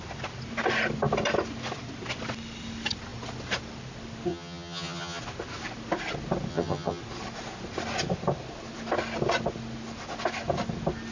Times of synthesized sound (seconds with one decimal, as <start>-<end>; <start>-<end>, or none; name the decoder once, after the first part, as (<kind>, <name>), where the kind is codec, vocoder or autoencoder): 4.3-5.2 (vocoder, HiFi-GAN); 6.5-7.0